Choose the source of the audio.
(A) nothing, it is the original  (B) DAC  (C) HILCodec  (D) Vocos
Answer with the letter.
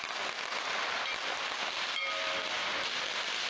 A